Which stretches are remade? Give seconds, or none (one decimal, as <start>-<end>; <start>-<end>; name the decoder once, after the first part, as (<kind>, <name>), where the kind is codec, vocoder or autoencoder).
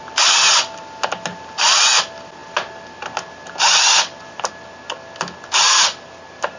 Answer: none